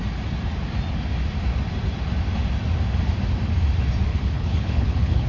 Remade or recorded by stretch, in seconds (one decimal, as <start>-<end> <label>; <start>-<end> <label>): 0.0-4.1 recorded; 4.1-5.3 remade